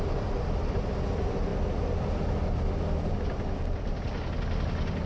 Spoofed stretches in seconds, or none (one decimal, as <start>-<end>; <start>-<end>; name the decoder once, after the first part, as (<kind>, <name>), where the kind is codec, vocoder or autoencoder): none